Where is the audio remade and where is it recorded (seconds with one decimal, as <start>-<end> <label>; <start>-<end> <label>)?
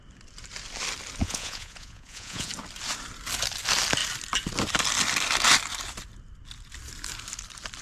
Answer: 0.0-1.2 recorded; 1.2-2.5 remade; 2.5-7.8 recorded